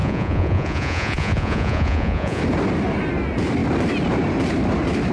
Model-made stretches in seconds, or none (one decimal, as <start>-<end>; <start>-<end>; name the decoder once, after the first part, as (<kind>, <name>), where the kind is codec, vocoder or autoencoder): 0.0-2.4 (vocoder, Vocos)